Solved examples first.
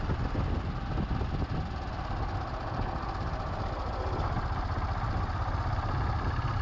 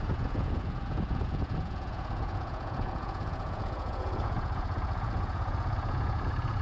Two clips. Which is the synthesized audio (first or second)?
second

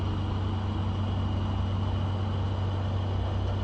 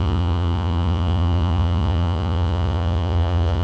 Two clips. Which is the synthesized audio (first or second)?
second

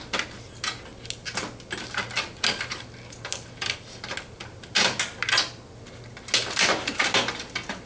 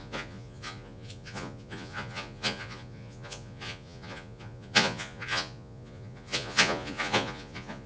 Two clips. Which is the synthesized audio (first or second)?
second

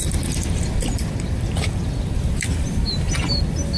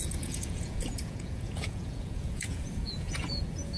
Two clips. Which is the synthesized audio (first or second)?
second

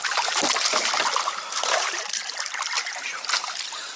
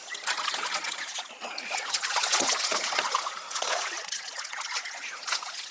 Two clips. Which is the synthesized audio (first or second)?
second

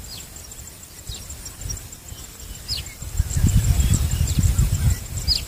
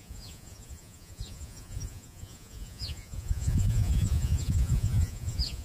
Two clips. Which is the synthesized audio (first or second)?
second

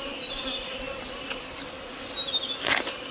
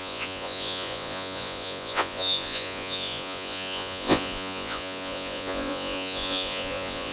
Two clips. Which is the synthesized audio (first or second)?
second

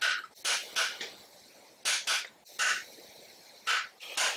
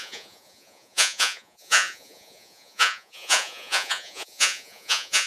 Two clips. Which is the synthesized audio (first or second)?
second